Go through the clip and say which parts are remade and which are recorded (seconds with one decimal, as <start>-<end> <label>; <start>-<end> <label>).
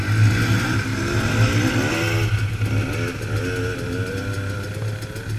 0.0-5.4 recorded